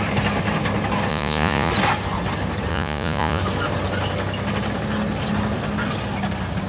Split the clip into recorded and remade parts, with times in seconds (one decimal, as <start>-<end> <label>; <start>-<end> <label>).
0.0-1.1 recorded; 1.1-1.7 remade; 1.7-2.7 recorded; 2.7-3.4 remade; 3.4-6.7 recorded